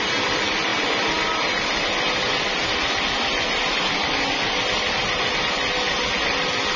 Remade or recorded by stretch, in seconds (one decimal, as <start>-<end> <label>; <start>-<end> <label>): 0.0-6.8 recorded